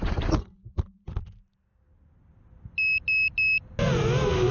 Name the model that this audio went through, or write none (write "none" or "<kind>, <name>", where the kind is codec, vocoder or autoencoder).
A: none